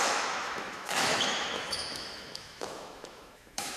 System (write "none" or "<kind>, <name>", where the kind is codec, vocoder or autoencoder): autoencoder, DAC-VAE